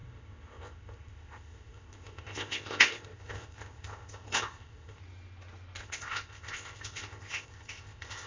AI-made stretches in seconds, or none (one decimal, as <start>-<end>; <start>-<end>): 0.0-5.0; 5.8-8.3